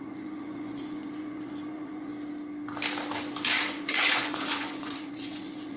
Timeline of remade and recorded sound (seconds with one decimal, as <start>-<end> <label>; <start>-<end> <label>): 0.0-2.1 remade; 2.1-3.6 recorded; 3.6-5.8 remade